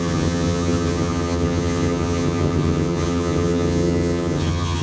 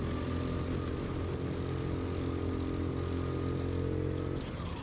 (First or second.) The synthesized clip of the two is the first